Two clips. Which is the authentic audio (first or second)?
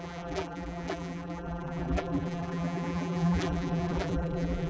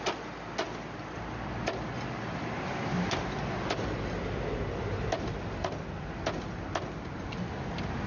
second